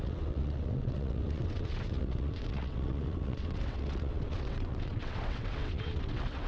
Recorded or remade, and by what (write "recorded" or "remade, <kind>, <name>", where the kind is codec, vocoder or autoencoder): remade, vocoder, WaveNeXt